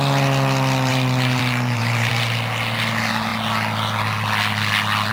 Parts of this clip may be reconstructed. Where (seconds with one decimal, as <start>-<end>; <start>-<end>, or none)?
0.9-2.1